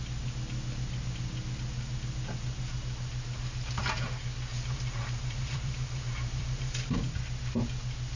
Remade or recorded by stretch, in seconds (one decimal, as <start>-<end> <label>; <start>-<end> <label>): 0.0-4.5 recorded; 4.5-6.9 remade; 6.9-8.2 recorded